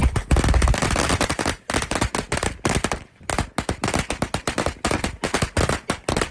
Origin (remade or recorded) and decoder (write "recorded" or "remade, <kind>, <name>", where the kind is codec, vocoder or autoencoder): recorded